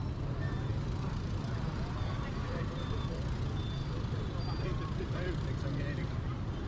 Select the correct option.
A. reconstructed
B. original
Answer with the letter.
B